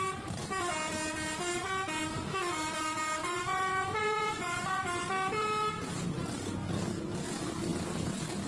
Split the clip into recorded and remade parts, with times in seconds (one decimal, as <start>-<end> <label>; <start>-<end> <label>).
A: 0.0-3.2 recorded; 3.2-4.8 remade; 4.8-8.5 recorded